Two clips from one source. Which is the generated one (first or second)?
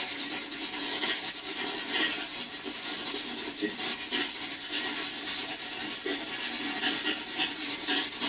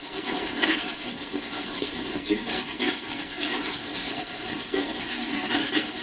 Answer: second